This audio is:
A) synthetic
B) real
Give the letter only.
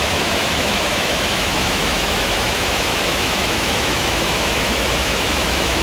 A